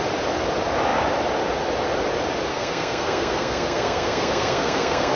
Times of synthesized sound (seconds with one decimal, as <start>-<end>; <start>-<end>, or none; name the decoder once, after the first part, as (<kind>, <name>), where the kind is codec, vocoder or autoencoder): 2.5-5.2 (codec, SNAC)